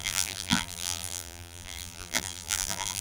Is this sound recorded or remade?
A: remade